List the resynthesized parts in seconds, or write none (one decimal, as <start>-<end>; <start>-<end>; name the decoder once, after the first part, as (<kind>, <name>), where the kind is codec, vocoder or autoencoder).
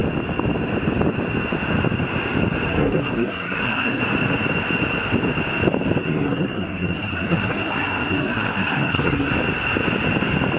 2.7-4.0 (codec, SNAC); 6.0-9.3